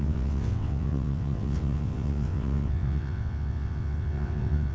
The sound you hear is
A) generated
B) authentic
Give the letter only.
A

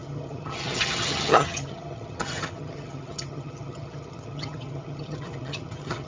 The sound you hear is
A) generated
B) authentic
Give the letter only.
A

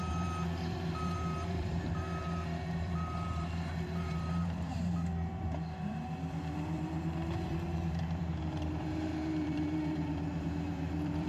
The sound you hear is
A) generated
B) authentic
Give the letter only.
A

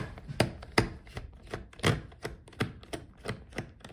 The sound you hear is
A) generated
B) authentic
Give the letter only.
B